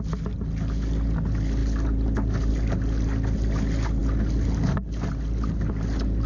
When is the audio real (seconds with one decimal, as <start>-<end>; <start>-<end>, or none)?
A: 0.0-6.3